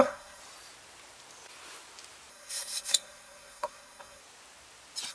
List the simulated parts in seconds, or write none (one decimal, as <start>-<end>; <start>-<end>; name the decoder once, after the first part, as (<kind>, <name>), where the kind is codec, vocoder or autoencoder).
0.0-0.4 (codec, SNAC); 2.3-4.2